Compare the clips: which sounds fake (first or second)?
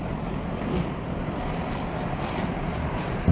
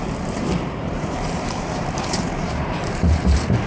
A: second